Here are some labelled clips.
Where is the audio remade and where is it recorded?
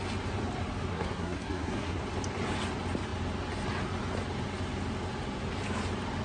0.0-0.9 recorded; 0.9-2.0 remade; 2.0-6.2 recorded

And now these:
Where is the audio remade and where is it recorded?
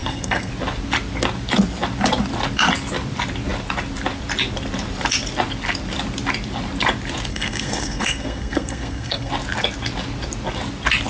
0.0-0.5 remade; 0.5-7.3 recorded; 7.3-9.3 remade; 9.3-11.1 recorded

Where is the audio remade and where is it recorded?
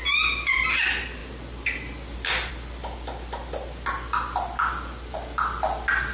0.0-6.1 recorded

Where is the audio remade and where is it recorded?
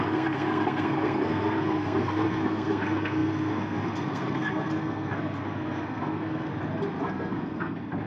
0.0-6.5 remade; 6.5-7.0 recorded; 7.0-8.1 remade